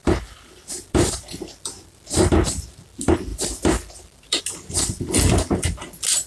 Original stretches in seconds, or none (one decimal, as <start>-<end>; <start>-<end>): 2.3-3.3; 4.4-6.3